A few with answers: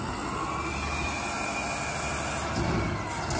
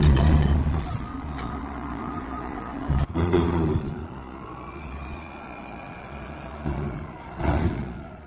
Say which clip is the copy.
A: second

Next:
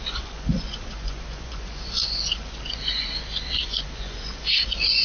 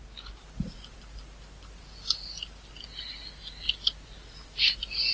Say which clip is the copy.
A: first